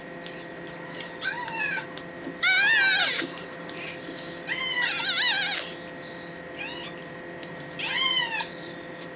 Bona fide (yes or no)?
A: yes